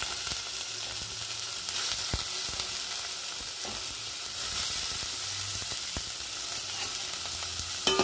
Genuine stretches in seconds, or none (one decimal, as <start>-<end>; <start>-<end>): 0.0-8.0